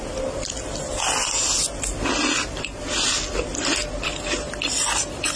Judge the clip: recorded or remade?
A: recorded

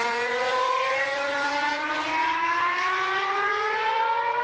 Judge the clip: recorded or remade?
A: remade